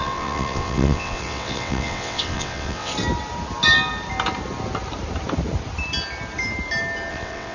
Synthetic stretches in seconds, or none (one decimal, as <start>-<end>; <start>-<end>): 0.0-2.9; 7.1-7.5